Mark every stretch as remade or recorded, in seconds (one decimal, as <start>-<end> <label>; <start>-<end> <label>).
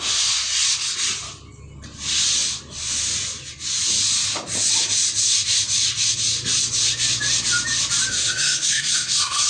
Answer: 0.0-8.1 recorded; 8.1-9.5 remade